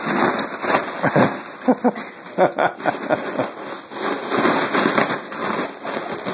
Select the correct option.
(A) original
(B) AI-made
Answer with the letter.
A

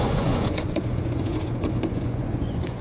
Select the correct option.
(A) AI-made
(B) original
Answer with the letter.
A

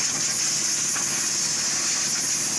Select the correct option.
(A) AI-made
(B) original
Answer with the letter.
B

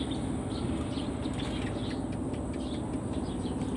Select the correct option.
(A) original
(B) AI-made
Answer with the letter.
A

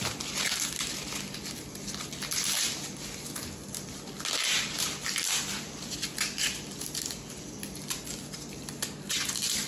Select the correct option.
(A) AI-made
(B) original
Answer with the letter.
B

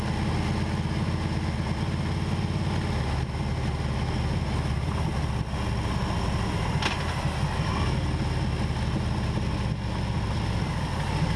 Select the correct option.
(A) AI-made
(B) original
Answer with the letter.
B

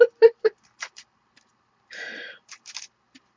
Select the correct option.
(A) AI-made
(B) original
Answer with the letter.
A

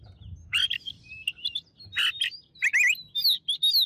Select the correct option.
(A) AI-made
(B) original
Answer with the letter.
B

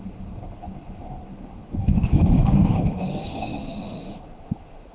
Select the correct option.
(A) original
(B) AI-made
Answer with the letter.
B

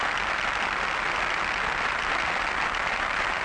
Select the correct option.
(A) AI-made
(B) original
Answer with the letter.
B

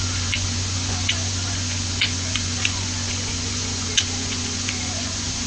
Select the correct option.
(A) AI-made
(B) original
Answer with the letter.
A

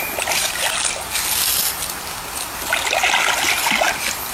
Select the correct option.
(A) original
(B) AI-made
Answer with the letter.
A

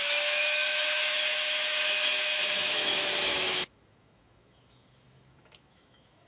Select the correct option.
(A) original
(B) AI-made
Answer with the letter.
B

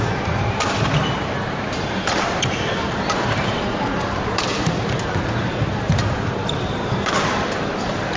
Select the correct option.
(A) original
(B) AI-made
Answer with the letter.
B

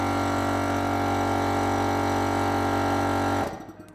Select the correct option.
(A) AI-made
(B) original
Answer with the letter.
B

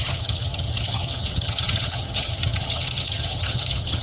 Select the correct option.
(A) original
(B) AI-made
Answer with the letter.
B